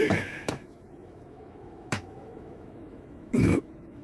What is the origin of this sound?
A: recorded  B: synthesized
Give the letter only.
B